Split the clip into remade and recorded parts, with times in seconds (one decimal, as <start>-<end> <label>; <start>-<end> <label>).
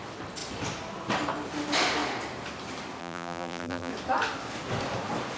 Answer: 0.0-3.0 recorded; 3.0-3.9 remade; 3.9-5.4 recorded